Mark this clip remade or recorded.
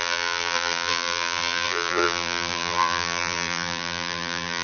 remade